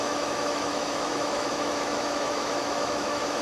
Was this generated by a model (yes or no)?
yes